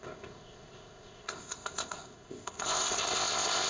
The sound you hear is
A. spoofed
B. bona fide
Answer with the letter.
A